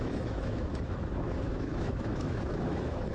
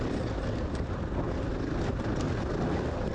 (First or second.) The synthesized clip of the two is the first